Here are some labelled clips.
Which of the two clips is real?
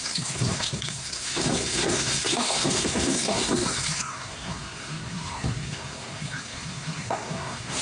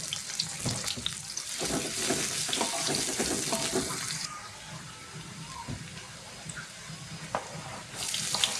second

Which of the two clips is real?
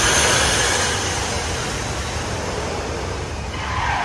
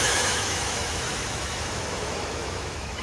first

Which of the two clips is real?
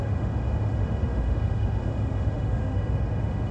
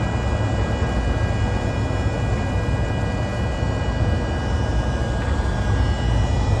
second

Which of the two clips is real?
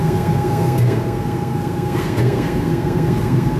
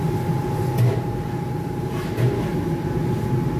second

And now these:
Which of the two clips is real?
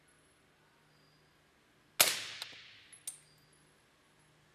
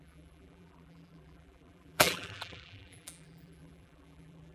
first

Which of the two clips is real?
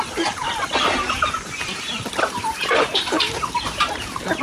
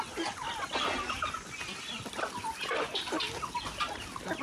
second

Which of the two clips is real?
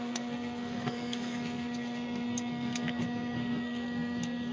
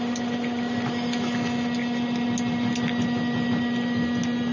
second